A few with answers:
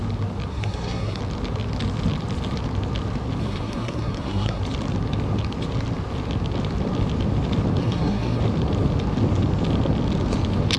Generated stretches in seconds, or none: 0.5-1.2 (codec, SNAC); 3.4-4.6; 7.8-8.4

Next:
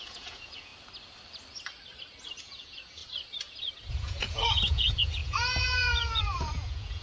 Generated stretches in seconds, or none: 0.0-0.7 (vocoder, Vocos); 2.4-3.0; 3.9-7.0

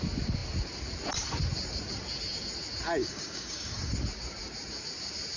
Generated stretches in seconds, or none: 3.0-3.9 (codec, DAC)

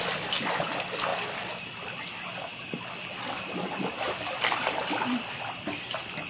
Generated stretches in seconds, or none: none

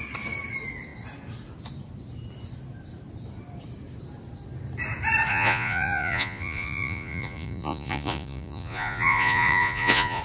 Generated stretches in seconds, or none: 5.3-10.2 (vocoder, Vocos)

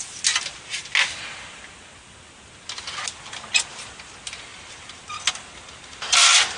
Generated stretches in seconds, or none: none

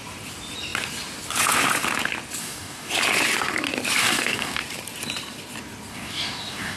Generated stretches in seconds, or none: 2.4-2.9 (codec, DAC); 4.0-4.6; 5.9-6.8

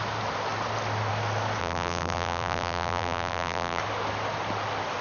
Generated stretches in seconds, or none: 1.6-3.8 (vocoder, BigVGAN v2)